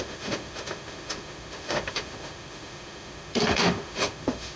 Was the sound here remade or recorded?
remade